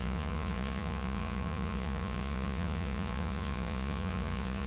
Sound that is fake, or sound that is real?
fake